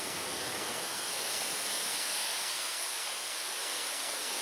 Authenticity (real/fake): fake